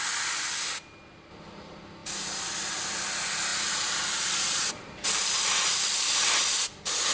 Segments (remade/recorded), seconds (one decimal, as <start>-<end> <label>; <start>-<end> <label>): 0.0-2.0 recorded; 2.0-2.7 remade; 2.7-3.5 recorded; 3.5-6.0 remade; 6.0-7.1 recorded